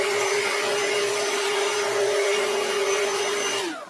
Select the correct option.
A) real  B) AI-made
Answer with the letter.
B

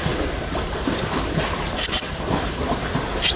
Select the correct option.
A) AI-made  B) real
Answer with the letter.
B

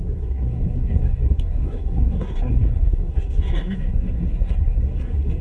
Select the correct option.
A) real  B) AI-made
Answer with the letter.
B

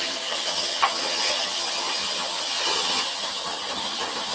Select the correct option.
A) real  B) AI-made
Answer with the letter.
B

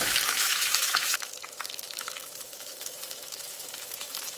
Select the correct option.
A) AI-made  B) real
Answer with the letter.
A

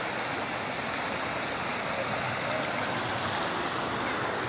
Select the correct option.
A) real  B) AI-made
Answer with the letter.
A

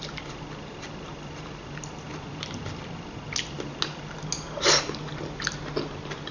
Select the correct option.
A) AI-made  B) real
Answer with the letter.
B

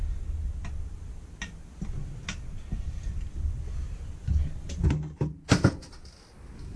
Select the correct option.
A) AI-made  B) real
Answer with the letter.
B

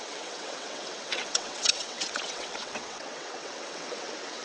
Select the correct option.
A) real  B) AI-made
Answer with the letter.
B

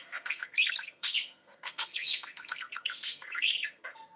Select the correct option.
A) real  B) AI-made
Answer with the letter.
B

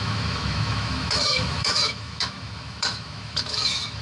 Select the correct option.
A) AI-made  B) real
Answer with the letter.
A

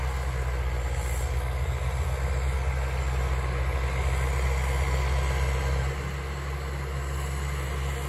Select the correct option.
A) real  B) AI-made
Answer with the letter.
A